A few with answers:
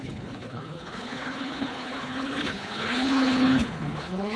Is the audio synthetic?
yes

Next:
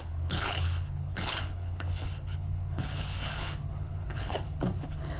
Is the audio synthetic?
yes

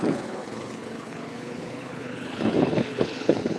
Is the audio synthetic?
yes